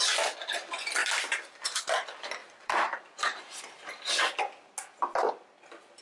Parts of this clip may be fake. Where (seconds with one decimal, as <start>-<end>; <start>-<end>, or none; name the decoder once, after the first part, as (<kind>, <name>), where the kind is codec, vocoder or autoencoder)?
1.0-1.8 (vocoder, BigVGAN v2); 2.4-4.2